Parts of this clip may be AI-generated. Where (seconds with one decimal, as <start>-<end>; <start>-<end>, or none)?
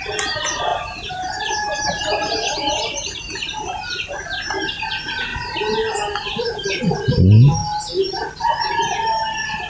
0.7-3.2; 5.3-6.8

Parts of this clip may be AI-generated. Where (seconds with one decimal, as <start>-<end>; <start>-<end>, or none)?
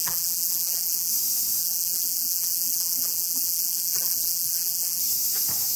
0.0-1.1; 1.6-5.0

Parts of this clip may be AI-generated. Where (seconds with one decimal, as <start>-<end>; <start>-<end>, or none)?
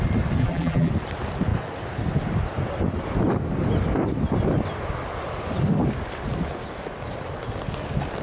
0.4-0.9